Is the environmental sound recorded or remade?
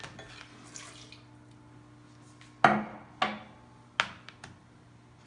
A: recorded